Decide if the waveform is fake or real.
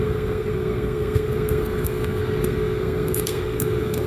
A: fake